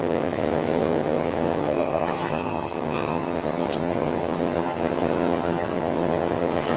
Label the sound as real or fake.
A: fake